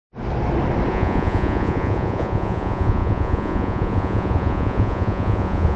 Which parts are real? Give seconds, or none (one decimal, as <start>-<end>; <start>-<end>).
0.0-0.9